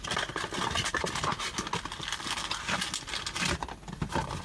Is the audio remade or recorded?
recorded